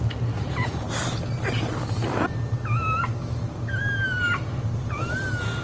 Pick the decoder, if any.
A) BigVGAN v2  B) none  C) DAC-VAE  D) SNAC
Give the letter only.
B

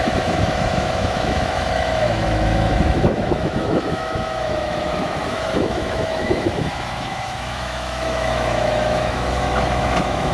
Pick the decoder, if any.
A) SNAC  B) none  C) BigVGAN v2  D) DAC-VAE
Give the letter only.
D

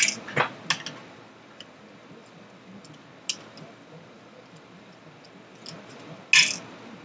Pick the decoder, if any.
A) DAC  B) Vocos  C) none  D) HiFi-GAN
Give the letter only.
C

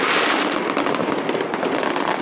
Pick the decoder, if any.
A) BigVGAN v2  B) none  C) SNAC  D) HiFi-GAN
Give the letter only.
B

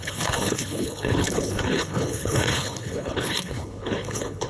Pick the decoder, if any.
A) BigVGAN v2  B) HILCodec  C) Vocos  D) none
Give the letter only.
B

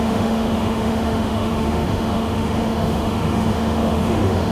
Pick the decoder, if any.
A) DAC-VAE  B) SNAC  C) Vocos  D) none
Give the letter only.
A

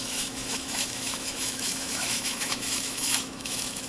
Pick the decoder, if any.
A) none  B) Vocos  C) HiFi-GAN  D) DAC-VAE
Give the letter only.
D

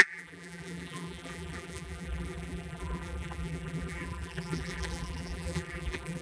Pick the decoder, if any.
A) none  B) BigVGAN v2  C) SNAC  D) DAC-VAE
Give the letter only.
B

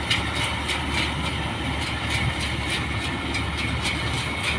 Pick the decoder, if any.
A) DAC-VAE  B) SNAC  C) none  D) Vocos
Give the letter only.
C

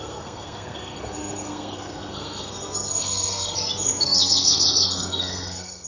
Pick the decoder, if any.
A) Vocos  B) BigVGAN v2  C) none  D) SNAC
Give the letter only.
D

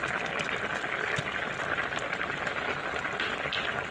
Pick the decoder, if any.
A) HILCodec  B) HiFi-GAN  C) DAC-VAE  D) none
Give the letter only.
D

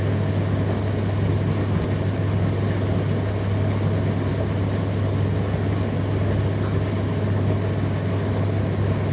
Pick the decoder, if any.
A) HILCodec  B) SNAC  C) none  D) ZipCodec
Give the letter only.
C